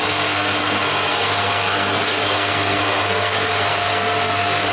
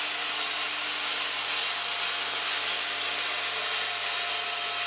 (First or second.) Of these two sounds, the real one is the second